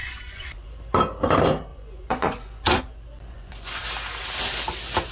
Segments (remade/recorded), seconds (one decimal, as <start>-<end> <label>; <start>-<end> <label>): 0.0-0.7 remade; 0.7-1.7 recorded; 1.7-2.8 remade; 2.8-3.3 recorded; 3.3-3.8 remade; 3.8-5.1 recorded